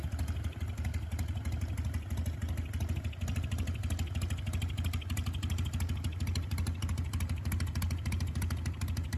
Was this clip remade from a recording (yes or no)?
no